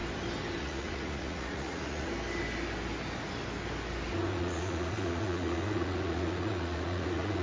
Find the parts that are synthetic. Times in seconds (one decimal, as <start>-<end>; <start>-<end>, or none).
0.6-2.1; 4.3-7.4

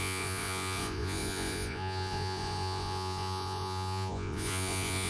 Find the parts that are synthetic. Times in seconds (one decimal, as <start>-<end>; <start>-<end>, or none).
0.0-5.1

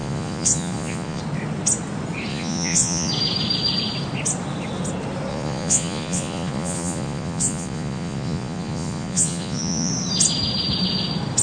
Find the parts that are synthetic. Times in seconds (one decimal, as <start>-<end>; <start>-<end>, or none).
0.0-1.2; 2.3-3.1; 5.3-9.9

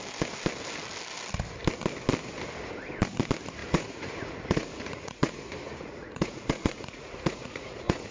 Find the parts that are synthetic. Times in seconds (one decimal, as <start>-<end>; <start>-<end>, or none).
3.6-8.1